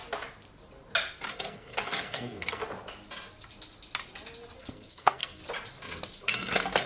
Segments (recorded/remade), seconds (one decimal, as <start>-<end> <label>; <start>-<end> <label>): 0.0-1.3 recorded; 1.3-2.6 remade; 2.6-4.6 recorded; 4.6-5.4 remade; 5.4-6.2 recorded; 6.2-6.9 remade